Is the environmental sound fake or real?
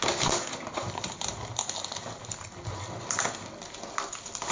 real